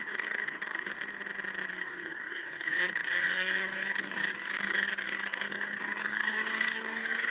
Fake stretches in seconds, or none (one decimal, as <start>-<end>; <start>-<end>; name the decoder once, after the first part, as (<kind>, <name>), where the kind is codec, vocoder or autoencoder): 0.0-0.9 (codec, DAC); 1.7-7.3